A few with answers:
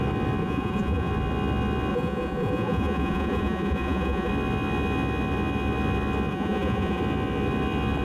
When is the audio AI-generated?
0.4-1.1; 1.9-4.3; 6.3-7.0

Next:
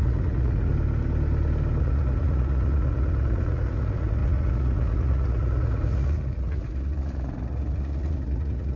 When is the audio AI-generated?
0.0-0.7; 1.8-8.8

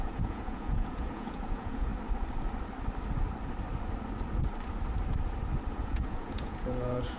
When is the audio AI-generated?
0.0-1.9; 5.7-7.2

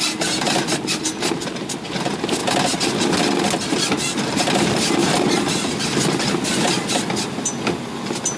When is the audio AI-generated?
none

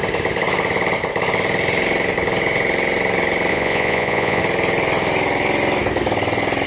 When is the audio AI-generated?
3.5-4.4

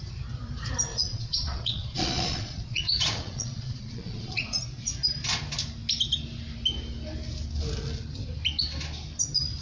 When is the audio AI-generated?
0.9-4.6

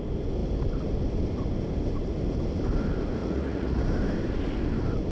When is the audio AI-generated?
3.2-3.8